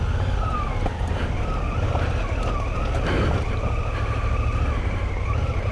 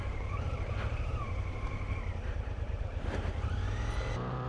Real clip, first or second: first